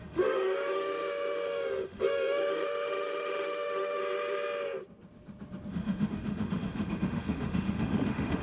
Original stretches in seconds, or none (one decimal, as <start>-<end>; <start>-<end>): 4.0-5.7